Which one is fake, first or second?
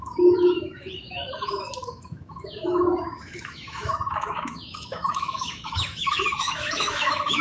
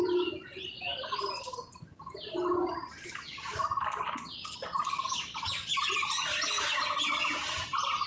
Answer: first